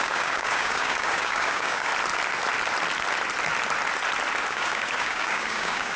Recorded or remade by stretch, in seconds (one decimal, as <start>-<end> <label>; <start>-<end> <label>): 0.0-1.9 remade; 1.9-4.5 recorded; 4.5-6.0 remade